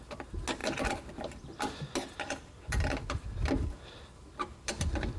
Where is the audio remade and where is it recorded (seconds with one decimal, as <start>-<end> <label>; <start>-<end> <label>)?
0.0-5.2 recorded